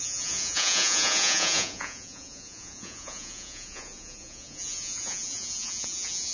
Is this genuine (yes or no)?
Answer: no